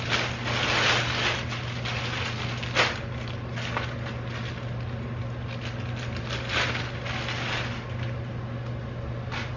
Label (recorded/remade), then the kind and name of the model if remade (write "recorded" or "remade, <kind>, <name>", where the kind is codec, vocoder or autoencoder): recorded